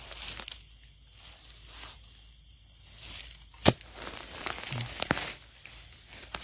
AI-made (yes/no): no